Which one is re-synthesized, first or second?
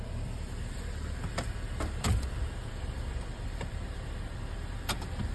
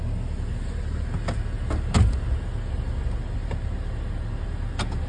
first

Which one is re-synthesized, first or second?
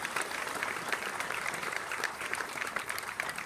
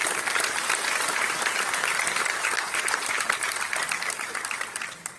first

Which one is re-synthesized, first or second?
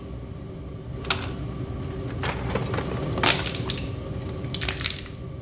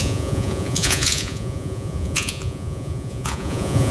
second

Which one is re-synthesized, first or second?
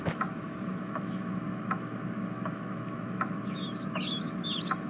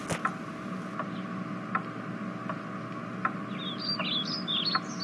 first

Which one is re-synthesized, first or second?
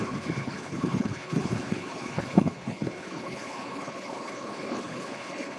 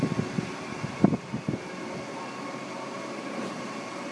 first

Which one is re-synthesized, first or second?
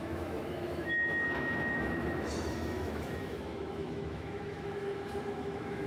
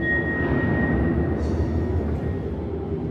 first